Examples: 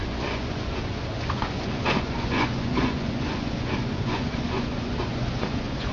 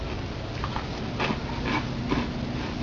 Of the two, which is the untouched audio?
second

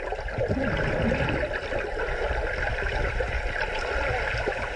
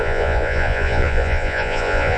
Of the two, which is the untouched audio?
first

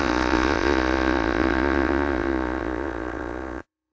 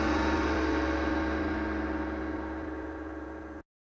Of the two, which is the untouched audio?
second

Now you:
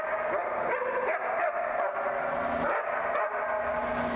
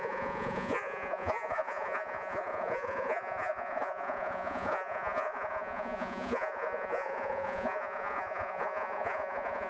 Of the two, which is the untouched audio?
first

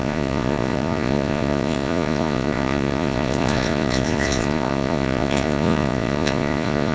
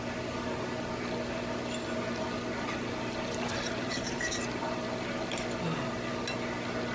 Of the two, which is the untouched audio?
second